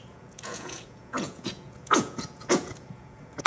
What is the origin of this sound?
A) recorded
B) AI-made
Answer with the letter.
B